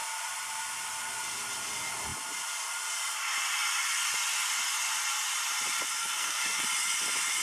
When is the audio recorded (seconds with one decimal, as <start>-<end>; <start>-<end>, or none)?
0.0-6.0; 6.6-7.4